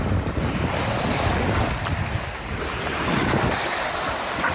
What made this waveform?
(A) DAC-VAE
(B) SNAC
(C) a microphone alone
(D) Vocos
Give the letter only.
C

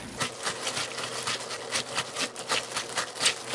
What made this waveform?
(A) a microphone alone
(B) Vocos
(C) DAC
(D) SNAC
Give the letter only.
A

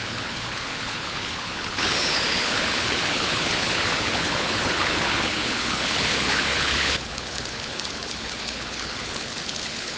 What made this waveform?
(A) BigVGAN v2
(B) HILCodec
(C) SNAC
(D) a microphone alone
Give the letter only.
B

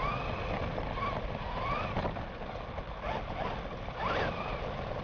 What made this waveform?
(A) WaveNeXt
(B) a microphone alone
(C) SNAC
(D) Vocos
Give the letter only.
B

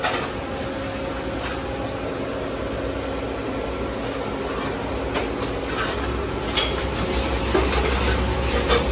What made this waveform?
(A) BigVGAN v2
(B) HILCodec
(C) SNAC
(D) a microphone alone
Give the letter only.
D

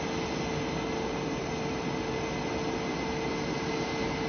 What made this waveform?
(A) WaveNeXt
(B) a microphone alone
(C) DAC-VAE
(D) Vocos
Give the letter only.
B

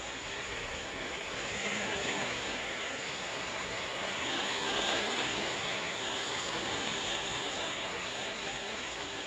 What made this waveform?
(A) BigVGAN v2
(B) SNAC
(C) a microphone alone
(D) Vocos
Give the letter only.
B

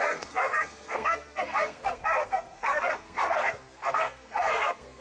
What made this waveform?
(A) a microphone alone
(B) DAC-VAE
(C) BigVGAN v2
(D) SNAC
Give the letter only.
D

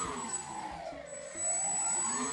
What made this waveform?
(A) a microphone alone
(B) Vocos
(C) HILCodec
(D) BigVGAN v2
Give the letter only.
A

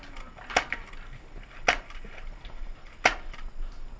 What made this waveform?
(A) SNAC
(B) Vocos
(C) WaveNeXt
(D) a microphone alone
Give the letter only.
D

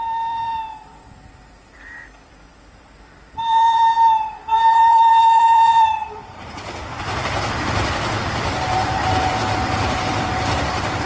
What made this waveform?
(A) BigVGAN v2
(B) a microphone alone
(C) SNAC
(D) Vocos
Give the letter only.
A